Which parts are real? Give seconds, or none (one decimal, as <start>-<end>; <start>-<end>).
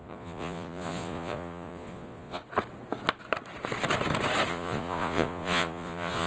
2.4-4.5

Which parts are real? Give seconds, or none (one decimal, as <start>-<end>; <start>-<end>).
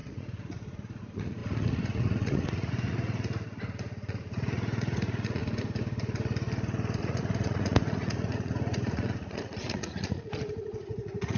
5.4-7.0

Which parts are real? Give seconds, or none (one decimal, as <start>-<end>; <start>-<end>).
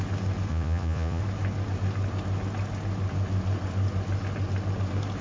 0.0-0.5; 1.2-5.2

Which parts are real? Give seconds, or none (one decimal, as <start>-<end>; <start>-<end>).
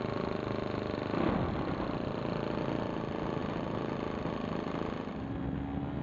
0.0-6.0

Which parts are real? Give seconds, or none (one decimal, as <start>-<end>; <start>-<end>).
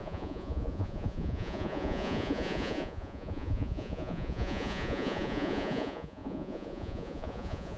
none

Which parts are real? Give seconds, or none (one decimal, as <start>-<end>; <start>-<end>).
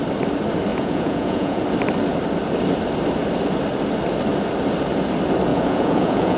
0.0-0.7; 1.6-5.5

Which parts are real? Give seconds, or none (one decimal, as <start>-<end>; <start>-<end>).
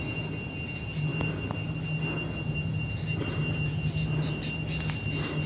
0.0-5.5